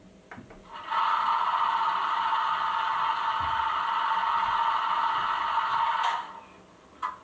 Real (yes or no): yes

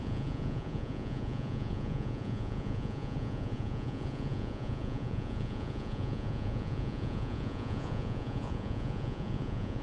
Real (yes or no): no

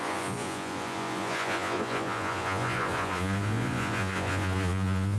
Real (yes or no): no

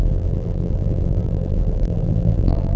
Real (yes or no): no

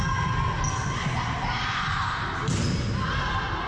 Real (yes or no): yes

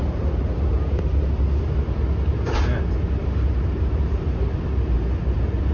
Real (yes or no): yes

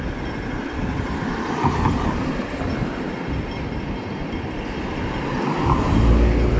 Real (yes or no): yes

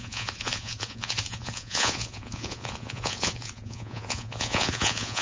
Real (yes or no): no